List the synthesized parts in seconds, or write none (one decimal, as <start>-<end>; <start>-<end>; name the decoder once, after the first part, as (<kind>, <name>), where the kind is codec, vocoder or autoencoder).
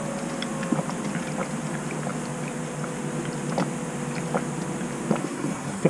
5.2-5.9 (codec, SNAC)